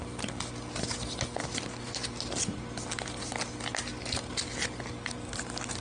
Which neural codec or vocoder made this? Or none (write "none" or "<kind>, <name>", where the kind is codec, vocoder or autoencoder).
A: none